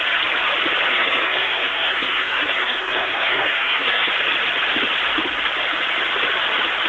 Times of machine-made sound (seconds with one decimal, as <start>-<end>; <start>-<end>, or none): 0.9-4.1